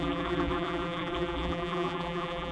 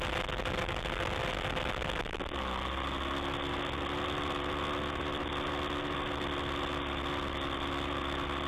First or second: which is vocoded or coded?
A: first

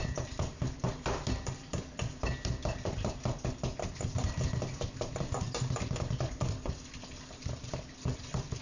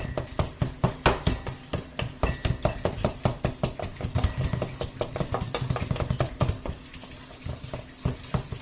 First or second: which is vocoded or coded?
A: first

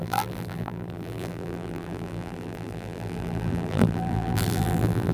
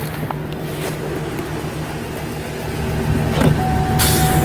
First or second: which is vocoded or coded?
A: first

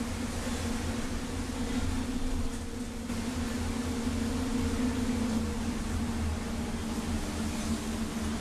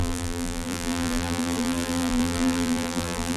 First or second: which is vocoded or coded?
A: second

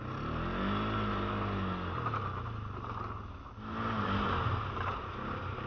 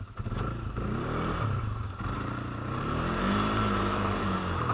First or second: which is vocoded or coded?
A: second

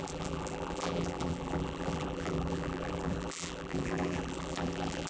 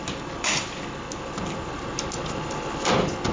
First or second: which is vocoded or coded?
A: first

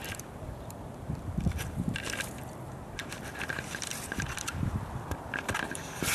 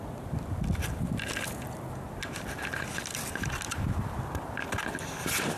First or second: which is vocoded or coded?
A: first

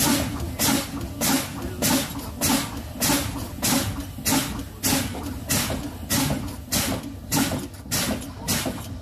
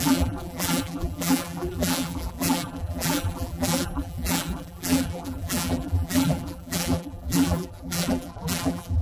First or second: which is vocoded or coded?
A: second